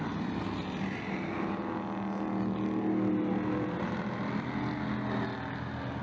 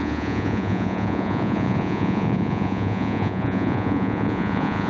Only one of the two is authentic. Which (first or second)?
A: first